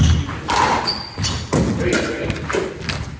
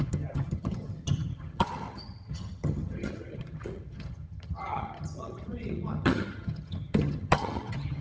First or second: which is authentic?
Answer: first